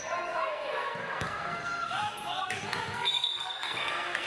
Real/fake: fake